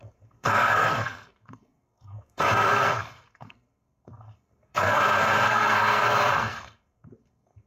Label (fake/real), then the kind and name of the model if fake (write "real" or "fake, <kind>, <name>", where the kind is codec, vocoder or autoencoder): fake, codec, SNAC